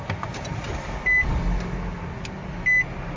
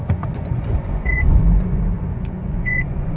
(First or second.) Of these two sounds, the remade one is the second